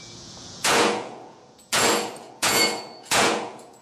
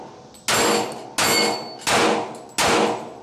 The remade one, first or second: first